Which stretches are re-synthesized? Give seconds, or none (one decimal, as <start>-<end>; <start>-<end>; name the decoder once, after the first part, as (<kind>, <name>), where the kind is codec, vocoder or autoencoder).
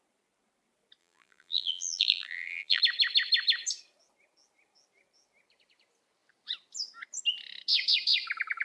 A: 1.0-2.8 (vocoder, BigVGAN v2)